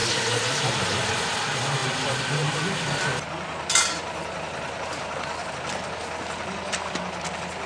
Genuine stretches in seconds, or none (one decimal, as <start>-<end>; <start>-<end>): 0.0-7.7